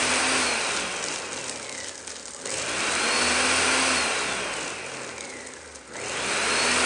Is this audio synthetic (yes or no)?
no